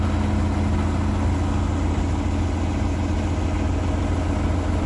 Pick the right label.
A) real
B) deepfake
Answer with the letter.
A